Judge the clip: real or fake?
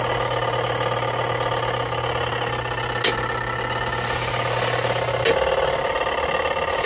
real